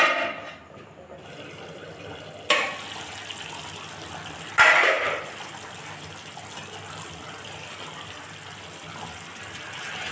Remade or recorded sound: recorded